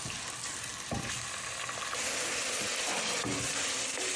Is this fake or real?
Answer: real